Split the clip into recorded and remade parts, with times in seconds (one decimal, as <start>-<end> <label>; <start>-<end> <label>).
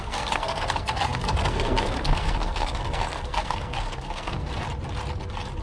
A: 0.0-4.6 remade; 4.6-5.6 recorded